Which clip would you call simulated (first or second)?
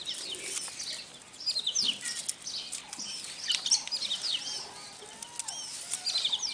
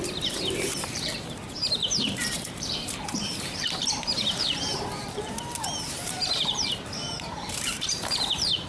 second